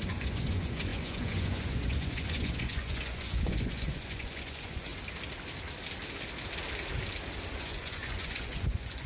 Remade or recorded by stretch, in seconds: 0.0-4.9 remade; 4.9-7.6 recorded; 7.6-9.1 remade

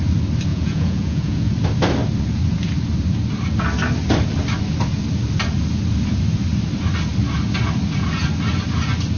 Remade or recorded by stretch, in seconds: 0.0-0.5 recorded; 0.5-1.5 remade; 1.5-9.2 recorded

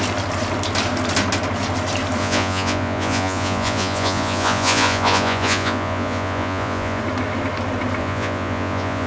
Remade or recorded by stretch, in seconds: 0.0-2.2 recorded; 2.2-7.0 remade; 7.0-8.0 recorded; 8.0-9.1 remade

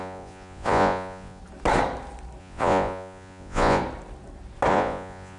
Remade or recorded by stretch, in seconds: 0.0-1.4 remade; 1.4-2.4 recorded; 2.4-3.8 remade; 3.8-4.7 recorded; 4.7-5.4 remade

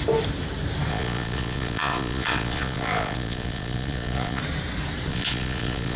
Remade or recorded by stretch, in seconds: 0.0-0.9 recorded; 0.9-4.4 remade; 4.4-5.1 recorded; 5.1-6.0 remade

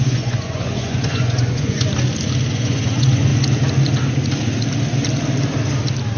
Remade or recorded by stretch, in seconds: 0.0-1.9 remade; 1.9-2.5 recorded; 2.5-3.3 remade; 3.3-6.2 recorded

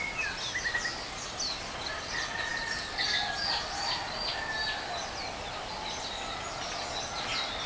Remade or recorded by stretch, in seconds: 0.0-7.7 recorded